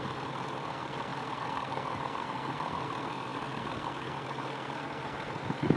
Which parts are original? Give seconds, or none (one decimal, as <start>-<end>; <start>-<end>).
none